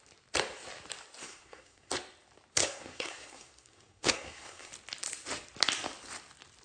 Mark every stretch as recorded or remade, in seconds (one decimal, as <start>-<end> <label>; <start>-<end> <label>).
0.0-1.2 recorded; 1.2-1.9 remade; 1.9-2.6 recorded; 2.6-4.7 remade; 4.7-6.6 recorded